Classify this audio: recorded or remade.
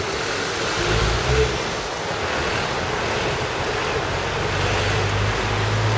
recorded